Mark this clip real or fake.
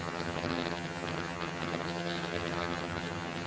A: fake